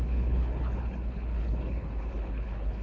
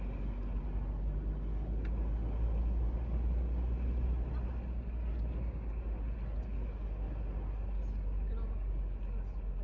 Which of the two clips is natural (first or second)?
second